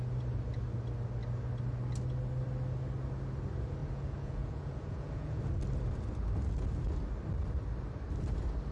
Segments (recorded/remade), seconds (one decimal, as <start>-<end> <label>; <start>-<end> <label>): 0.0-3.8 recorded; 3.8-5.4 remade; 5.4-8.7 recorded